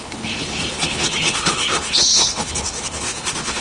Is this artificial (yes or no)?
yes